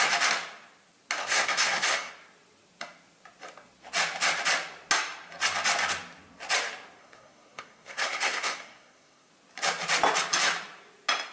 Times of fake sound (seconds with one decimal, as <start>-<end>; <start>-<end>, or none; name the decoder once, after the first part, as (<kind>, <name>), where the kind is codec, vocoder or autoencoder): 1.2-2.1 (codec, SNAC); 7.0-9.3